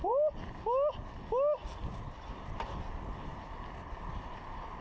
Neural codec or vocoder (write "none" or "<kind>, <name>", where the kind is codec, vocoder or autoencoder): none